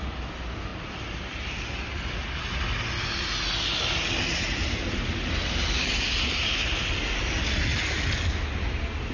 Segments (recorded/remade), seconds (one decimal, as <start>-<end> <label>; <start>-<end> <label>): 0.0-9.1 recorded